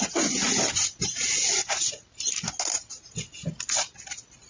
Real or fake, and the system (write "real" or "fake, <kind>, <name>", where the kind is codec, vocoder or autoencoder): real